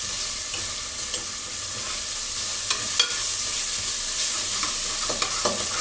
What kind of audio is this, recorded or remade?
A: recorded